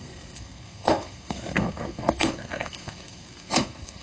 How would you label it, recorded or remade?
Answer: remade